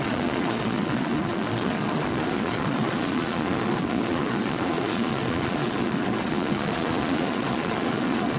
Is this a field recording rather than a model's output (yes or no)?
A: no